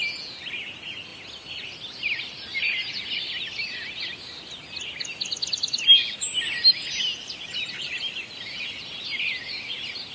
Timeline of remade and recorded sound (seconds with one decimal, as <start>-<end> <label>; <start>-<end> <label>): 0.0-10.1 recorded